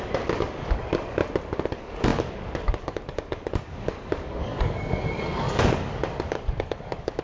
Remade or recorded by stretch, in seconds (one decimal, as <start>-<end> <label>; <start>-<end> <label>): 0.0-1.2 remade; 1.2-1.7 recorded; 1.7-7.2 remade